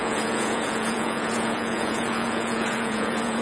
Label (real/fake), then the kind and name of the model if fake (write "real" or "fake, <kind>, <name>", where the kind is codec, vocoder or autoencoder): fake, vocoder, Vocos